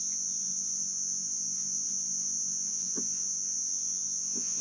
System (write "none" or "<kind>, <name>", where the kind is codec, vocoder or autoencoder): vocoder, Vocos